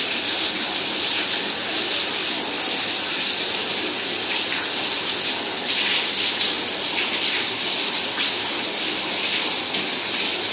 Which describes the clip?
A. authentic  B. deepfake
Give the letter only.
A